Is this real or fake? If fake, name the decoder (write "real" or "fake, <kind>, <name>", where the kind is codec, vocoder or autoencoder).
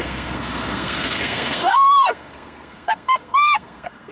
fake, codec, SNAC